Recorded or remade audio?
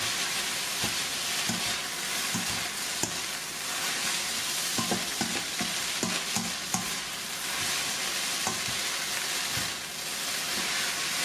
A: recorded